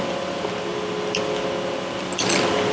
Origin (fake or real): real